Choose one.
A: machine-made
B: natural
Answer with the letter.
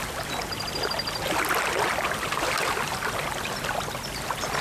B